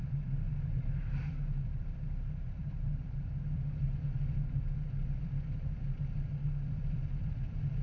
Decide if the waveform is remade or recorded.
remade